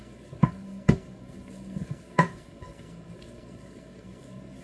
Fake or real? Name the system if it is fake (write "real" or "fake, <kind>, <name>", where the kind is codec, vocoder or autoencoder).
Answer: fake, codec, SNAC